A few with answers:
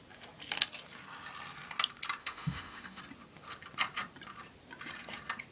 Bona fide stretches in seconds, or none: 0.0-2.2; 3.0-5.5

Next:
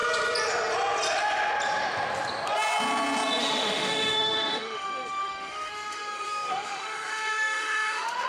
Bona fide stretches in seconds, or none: 0.0-3.4

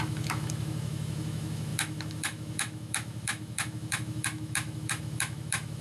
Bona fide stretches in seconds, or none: none

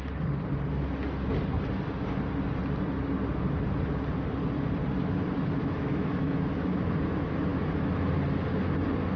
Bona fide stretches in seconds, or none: 0.0-5.6; 6.9-9.2

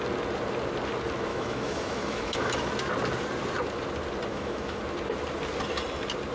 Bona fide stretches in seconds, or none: 0.0-1.3; 2.7-4.3; 4.8-6.3

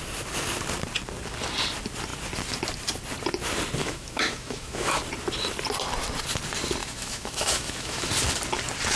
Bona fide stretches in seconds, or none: 0.0-3.8; 5.0-6.8; 8.1-9.0

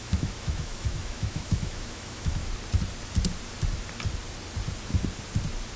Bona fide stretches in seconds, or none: 2.4-5.8

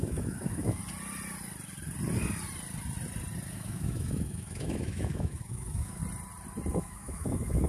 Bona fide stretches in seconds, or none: 0.8-3.5; 6.0-6.7